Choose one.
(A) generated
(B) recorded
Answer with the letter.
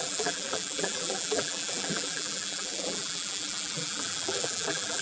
A